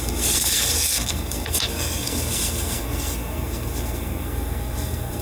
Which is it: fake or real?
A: fake